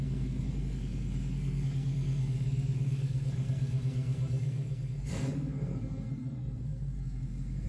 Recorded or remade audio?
remade